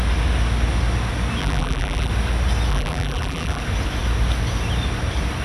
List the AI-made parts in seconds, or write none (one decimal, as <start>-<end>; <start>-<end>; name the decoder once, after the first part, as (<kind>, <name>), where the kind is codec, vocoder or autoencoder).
1.4-2.1 (vocoder, BigVGAN v2); 2.7-3.6